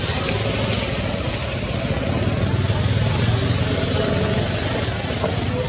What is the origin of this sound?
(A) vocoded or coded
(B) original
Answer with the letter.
B